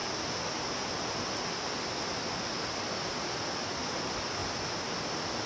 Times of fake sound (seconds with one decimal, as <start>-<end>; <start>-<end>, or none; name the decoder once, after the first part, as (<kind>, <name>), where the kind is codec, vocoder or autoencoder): none